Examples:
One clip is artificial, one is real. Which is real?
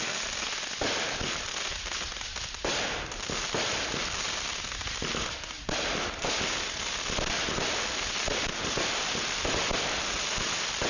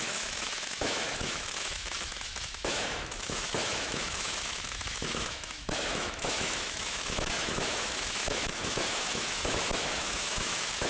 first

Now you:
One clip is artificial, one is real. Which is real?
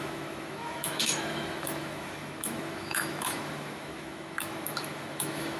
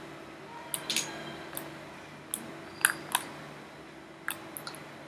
second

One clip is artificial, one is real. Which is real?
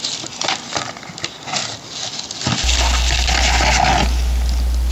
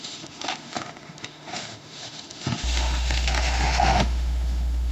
first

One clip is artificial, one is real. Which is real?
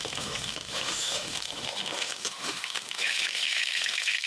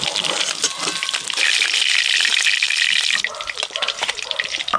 second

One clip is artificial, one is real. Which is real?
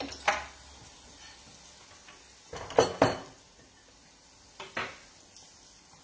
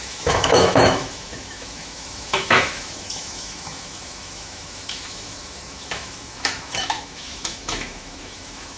first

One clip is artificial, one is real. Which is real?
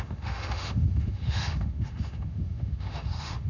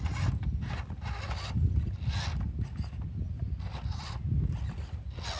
second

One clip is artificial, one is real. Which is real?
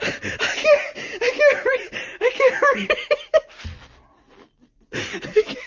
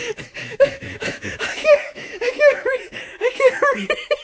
first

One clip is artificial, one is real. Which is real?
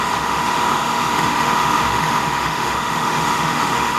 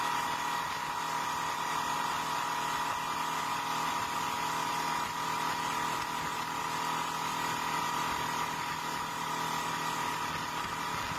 second